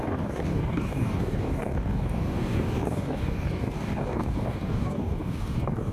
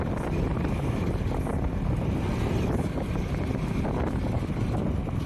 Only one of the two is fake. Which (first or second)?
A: first